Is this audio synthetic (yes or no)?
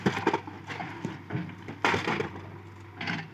no